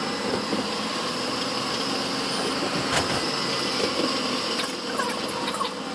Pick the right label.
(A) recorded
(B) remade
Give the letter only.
A